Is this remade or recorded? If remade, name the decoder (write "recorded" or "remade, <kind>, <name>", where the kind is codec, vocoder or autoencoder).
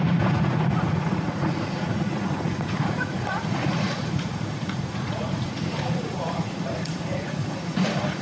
remade, vocoder, Vocos